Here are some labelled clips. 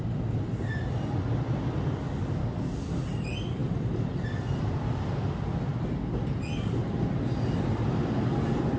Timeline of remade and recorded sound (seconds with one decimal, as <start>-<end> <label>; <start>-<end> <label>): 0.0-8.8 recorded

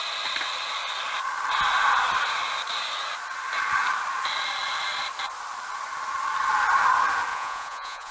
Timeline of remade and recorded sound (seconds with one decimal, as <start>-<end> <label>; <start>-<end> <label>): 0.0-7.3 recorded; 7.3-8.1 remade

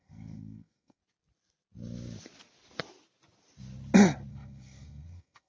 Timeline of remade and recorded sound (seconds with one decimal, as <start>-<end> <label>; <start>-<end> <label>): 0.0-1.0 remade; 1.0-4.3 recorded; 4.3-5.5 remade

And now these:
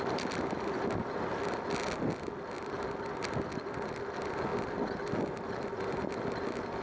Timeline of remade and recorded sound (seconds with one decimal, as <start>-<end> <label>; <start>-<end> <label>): 0.0-4.5 recorded; 4.5-5.1 remade; 5.1-6.8 recorded

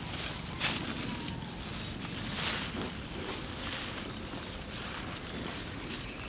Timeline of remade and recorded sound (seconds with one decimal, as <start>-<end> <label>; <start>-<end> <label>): 0.0-6.3 recorded

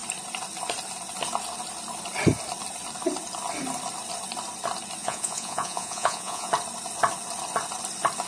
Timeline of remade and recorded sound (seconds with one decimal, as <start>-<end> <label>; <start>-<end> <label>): 0.0-5.0 recorded; 5.0-6.5 remade; 6.5-8.3 recorded

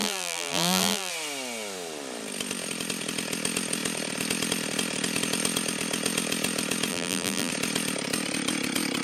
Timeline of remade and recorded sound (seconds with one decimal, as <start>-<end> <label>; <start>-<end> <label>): 0.0-1.1 remade; 1.1-6.9 recorded; 6.9-7.5 remade; 7.5-9.0 recorded